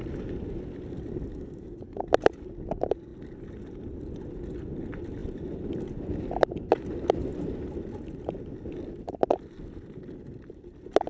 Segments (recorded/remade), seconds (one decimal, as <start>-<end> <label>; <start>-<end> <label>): 0.0-11.1 recorded